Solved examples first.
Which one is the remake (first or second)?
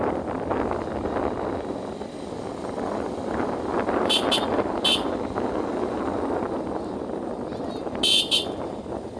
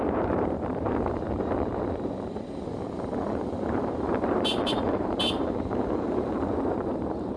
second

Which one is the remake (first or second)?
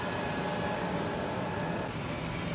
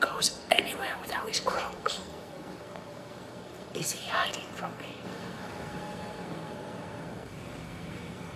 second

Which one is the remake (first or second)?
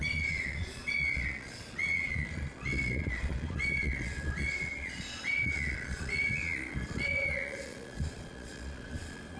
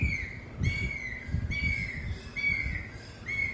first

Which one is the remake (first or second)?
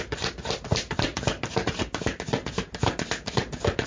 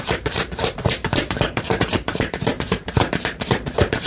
second